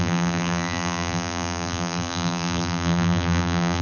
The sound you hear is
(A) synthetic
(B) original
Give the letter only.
A